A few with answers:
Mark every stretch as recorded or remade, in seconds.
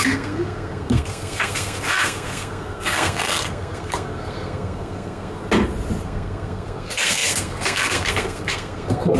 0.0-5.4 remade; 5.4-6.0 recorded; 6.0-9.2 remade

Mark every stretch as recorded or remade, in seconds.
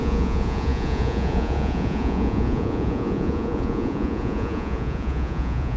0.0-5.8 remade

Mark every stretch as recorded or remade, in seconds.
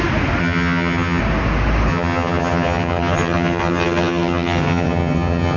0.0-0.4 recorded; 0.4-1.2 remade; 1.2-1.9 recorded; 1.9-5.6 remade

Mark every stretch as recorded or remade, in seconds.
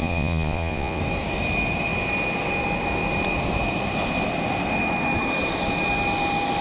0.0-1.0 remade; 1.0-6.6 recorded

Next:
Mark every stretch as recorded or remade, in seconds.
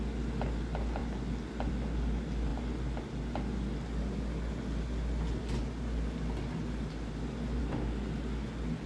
0.0-8.9 recorded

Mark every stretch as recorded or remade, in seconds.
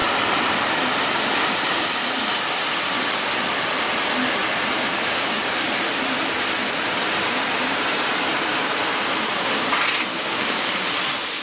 0.0-10.1 recorded; 10.1-10.7 remade; 10.7-11.4 recorded